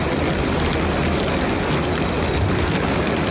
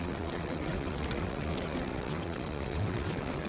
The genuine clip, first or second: first